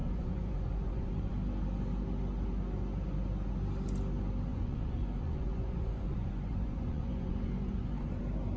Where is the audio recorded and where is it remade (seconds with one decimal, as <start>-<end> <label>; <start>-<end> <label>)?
0.0-1.3 remade; 1.3-4.5 recorded; 4.5-8.2 remade; 8.2-8.6 recorded